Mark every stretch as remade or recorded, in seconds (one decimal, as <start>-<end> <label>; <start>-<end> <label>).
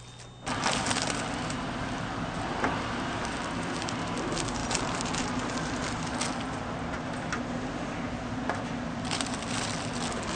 0.0-10.4 recorded